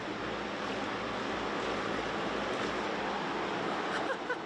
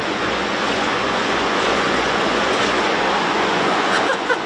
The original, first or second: first